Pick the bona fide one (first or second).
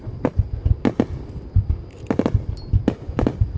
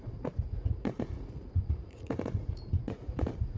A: first